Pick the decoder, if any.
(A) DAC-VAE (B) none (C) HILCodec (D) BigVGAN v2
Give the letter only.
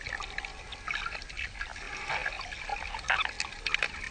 B